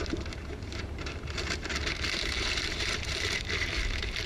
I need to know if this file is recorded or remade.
remade